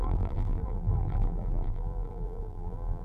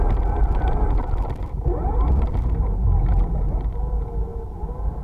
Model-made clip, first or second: first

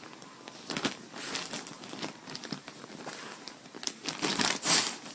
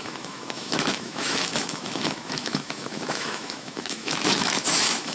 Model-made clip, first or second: second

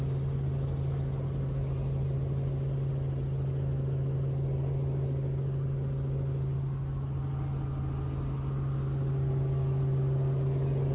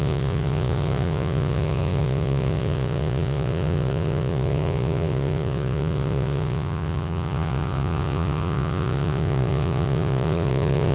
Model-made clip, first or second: second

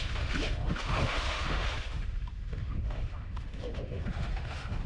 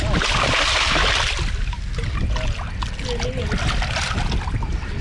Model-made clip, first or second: first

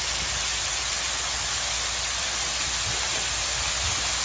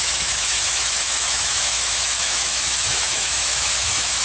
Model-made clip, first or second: second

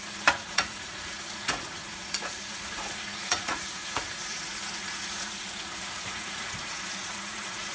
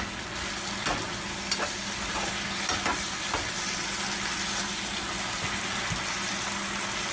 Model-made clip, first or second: first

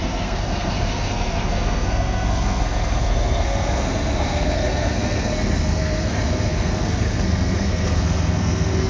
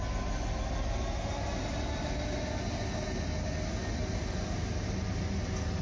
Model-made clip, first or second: first